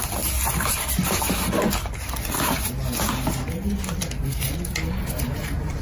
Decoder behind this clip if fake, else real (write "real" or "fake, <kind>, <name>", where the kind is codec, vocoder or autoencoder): real